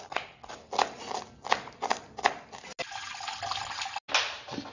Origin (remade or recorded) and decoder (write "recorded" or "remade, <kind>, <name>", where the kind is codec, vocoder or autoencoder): recorded